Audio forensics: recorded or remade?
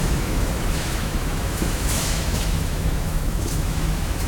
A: remade